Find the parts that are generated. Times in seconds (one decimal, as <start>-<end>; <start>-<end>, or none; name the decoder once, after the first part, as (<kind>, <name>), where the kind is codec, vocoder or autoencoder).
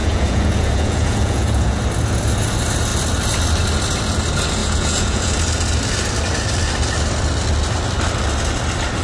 0.0-1.8 (vocoder, Vocos); 4.6-5.3